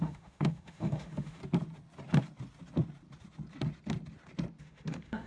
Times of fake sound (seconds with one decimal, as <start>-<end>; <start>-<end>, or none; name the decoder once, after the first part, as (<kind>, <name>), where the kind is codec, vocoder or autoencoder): 0.0-1.4 (autoencoder, DAC-VAE); 4.6-5.3